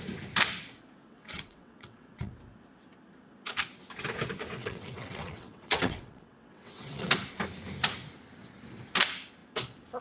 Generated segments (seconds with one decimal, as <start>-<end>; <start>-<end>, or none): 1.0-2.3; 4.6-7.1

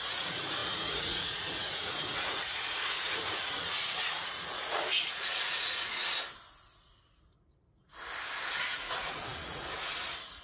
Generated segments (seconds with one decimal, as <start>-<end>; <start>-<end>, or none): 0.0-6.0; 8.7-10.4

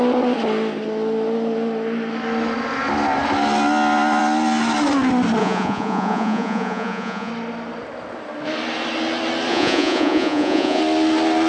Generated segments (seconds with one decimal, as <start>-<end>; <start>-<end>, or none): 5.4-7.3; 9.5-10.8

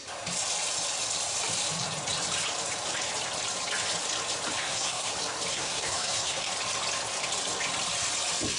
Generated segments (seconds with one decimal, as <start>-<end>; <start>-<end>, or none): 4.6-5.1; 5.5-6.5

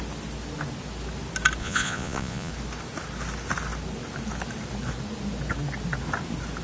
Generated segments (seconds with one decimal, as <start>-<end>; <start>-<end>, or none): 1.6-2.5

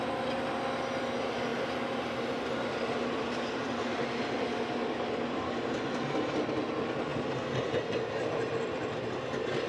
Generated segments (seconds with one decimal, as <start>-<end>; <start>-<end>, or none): none

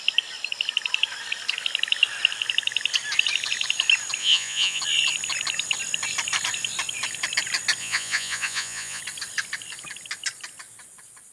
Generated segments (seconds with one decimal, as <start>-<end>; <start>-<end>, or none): 4.2-4.8; 7.8-9.0

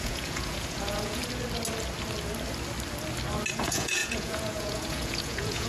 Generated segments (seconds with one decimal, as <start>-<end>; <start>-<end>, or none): 0.0-1.2; 3.5-5.7